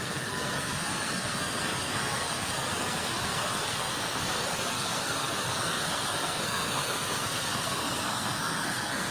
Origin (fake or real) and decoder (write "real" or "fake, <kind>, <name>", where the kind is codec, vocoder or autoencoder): fake, codec, SNAC